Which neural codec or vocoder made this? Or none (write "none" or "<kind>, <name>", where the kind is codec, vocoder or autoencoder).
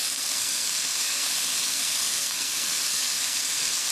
codec, SNAC